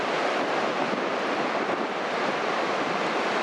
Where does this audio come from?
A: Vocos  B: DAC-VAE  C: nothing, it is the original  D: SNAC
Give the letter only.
C